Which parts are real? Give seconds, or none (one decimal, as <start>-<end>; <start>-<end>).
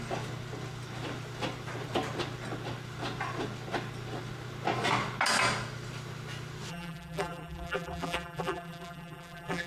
0.0-6.7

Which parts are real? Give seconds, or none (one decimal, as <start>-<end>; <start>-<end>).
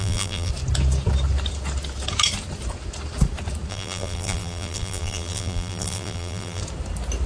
0.5-3.7; 6.6-7.3